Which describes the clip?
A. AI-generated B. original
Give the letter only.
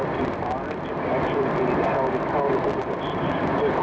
B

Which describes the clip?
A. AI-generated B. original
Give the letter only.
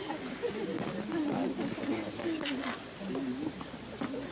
B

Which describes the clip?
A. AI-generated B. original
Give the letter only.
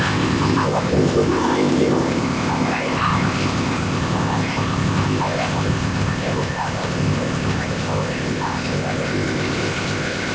A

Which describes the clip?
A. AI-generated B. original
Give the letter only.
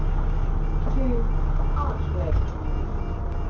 B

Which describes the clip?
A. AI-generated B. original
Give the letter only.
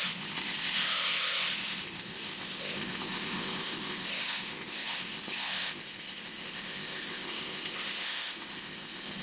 A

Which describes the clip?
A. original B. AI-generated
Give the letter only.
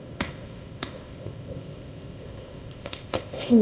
B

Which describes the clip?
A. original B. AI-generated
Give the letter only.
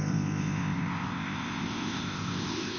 B